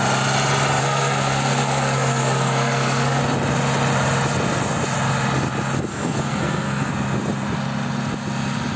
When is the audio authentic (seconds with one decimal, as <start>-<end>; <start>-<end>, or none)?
0.0-0.8; 3.2-5.9; 6.9-8.8